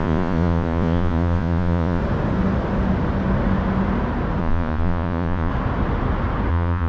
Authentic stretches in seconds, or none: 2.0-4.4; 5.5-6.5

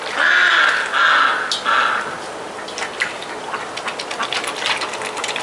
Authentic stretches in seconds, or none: 0.0-5.4

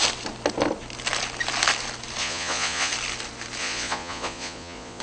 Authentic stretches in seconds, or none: 0.0-2.2; 2.9-3.6

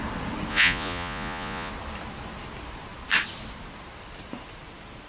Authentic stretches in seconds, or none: 0.0-0.5; 1.7-5.1

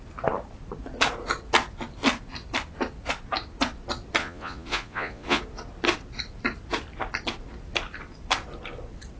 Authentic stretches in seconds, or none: 0.0-4.2; 5.4-9.2

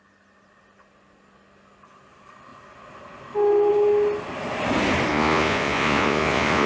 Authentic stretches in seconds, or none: 0.0-5.1